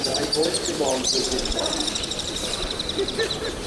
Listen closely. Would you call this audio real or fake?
fake